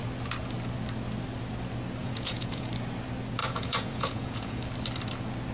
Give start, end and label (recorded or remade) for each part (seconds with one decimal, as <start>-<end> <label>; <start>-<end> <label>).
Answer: 0.0-2.0 recorded; 2.0-2.7 remade; 2.7-3.4 recorded; 3.4-4.6 remade; 4.6-5.5 recorded